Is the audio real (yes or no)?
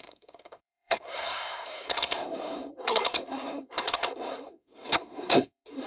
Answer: no